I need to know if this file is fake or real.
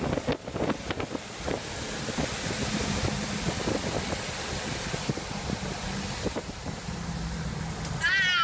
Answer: real